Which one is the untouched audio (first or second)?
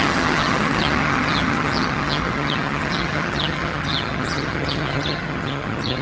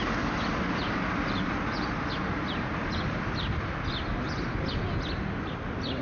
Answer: second